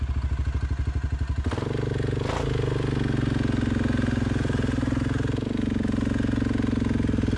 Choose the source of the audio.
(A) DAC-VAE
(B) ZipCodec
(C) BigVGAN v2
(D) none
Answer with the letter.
D